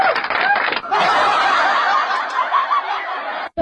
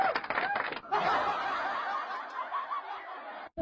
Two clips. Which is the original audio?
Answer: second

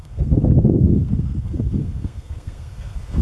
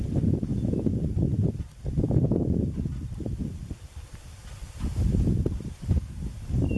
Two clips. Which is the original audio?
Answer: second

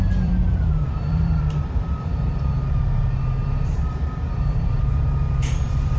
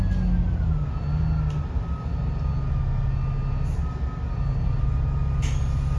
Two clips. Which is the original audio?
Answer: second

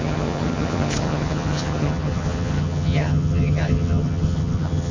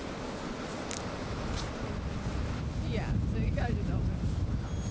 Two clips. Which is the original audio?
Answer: second